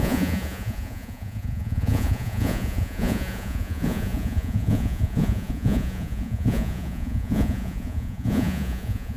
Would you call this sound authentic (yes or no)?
no